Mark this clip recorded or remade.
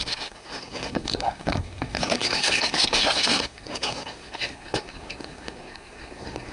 remade